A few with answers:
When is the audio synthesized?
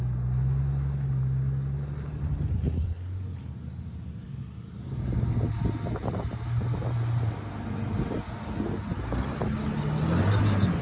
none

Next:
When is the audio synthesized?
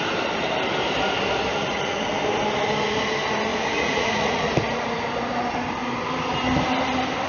1.5-2.1 (vocoder, Vocos); 3.5-4.5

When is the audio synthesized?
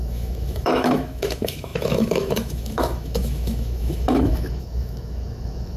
0.0-5.8 (autoencoder, DAC-VAE)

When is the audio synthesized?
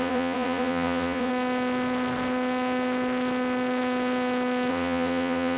0.0-1.3 (vocoder, Vocos); 4.7-5.6